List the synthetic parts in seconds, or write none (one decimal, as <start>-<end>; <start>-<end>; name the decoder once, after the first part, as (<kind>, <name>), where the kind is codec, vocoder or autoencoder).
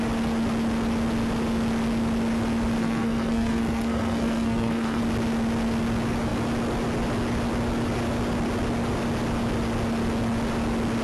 2.8-5.0 (codec, SNAC)